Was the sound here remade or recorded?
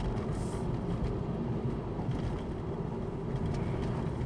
recorded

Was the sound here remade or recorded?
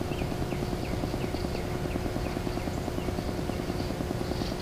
recorded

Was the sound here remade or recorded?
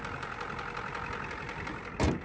recorded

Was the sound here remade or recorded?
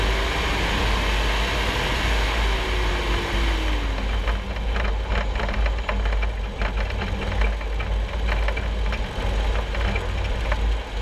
recorded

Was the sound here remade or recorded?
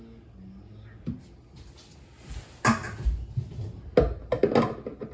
recorded